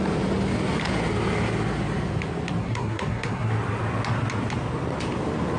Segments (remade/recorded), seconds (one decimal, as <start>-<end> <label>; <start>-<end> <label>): 0.0-2.6 recorded; 2.6-3.5 remade; 3.5-5.6 recorded